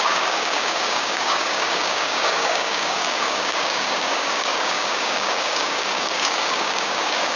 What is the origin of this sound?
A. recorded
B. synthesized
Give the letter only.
B